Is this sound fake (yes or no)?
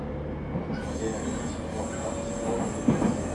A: no